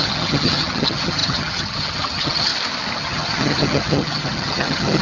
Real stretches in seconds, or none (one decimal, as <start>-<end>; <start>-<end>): 2.5-3.0